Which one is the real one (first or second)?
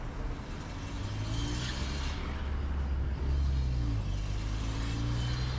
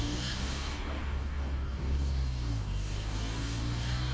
first